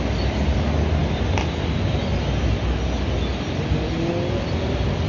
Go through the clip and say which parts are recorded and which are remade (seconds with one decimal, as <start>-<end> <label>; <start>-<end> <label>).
0.0-5.1 recorded